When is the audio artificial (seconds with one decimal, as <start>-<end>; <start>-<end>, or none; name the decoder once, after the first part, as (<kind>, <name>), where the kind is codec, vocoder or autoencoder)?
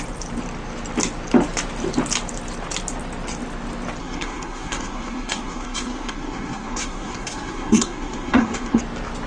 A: 4.0-8.8 (codec, SNAC)